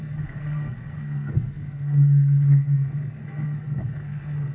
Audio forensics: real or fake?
fake